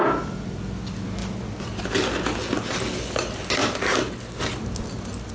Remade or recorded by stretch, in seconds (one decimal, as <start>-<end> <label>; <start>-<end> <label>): 0.0-5.3 recorded